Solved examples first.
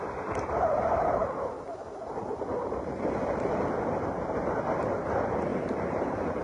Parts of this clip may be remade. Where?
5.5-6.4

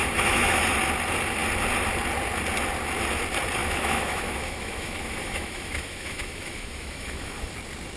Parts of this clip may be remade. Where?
0.0-0.6; 3.6-7.5

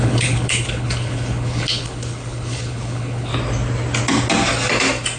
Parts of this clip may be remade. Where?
0.0-3.3

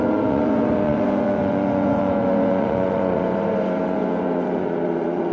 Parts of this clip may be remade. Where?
0.0-5.3

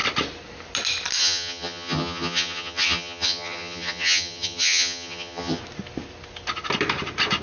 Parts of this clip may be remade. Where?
1.2-5.6

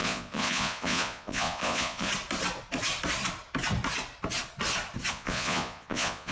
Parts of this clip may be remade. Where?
0.0-2.1; 5.1-6.3